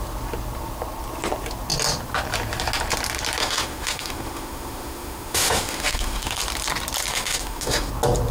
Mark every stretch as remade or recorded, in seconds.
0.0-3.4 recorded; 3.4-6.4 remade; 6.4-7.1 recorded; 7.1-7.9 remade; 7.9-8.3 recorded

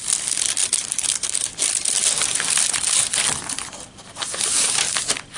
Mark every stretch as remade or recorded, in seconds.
0.0-5.4 recorded

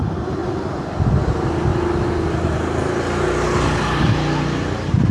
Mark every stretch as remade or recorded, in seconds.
0.0-5.1 recorded

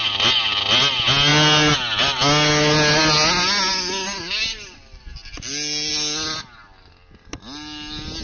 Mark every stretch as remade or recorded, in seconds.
0.0-8.2 recorded

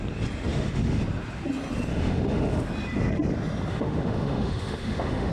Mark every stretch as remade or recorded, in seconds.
0.0-0.5 recorded; 0.5-1.0 remade; 1.0-1.9 recorded; 1.9-2.6 remade; 2.6-3.7 recorded; 3.7-5.3 remade

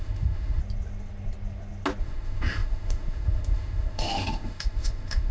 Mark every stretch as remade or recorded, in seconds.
0.0-0.6 remade; 0.6-2.0 recorded; 2.0-5.3 remade

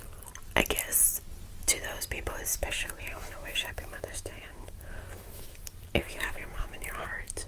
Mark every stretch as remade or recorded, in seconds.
0.0-2.5 recorded; 2.5-5.6 remade; 5.6-6.0 recorded; 6.0-7.1 remade; 7.1-7.5 recorded